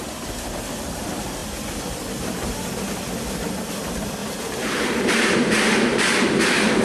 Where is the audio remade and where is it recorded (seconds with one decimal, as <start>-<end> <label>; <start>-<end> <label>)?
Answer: 0.0-4.2 recorded; 4.2-6.0 remade; 6.0-6.8 recorded